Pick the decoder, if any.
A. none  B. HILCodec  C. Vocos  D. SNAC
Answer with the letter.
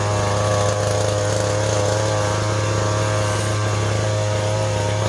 A